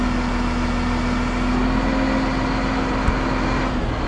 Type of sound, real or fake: real